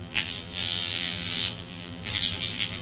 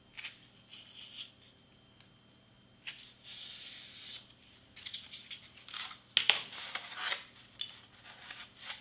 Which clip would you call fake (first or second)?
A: first